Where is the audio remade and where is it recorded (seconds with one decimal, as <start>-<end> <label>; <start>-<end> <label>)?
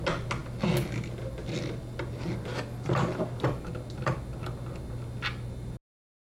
0.0-6.3 recorded